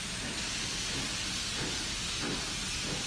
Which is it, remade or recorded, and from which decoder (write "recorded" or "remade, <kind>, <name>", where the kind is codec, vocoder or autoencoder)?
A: recorded